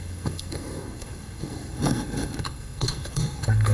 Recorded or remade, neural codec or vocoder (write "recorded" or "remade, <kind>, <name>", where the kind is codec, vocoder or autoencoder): remade, codec, SNAC